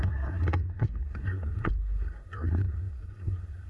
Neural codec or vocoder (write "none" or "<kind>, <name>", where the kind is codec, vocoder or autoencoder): codec, SNAC